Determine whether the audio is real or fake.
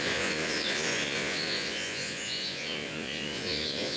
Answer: fake